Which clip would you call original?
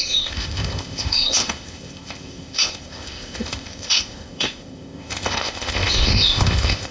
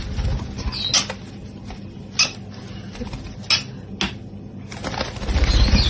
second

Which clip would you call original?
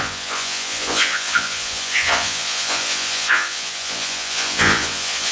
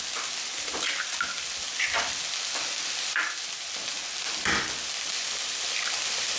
second